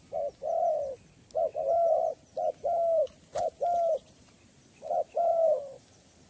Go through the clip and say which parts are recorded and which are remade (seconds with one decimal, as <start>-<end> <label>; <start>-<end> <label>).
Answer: 0.0-6.3 recorded